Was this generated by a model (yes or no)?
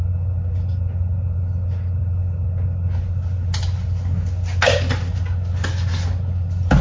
no